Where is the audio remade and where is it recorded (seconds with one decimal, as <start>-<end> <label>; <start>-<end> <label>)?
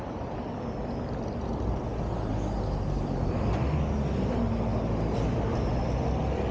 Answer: 0.0-6.5 recorded